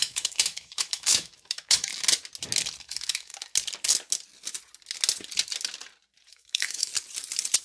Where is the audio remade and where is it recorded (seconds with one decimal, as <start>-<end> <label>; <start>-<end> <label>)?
0.0-1.9 remade; 1.9-2.8 recorded; 2.8-3.3 remade; 3.3-6.3 recorded; 6.3-6.9 remade; 6.9-7.6 recorded